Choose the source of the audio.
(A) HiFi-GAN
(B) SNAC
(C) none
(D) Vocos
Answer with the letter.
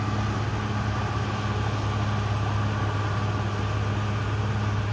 C